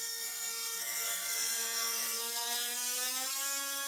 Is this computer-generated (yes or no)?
yes